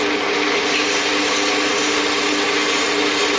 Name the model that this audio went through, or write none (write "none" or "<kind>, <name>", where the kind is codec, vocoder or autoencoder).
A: none